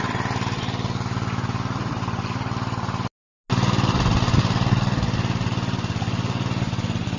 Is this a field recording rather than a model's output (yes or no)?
yes